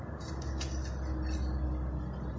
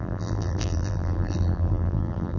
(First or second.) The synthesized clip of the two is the second